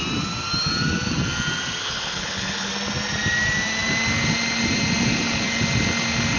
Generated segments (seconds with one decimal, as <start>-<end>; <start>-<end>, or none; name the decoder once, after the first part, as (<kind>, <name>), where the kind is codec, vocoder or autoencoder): 1.8-2.7 (codec, HILCodec)